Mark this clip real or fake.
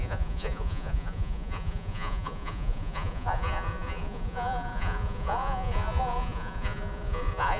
fake